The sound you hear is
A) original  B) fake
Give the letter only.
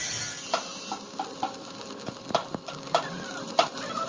A